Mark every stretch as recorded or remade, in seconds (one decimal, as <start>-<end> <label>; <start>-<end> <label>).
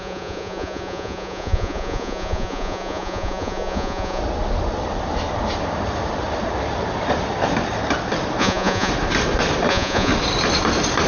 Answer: 0.0-4.2 remade; 4.2-8.4 recorded; 8.4-8.9 remade; 8.9-9.7 recorded; 9.7-10.1 remade; 10.1-11.1 recorded